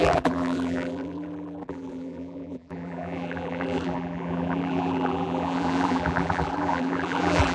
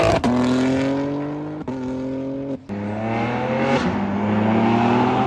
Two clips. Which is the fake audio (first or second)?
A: first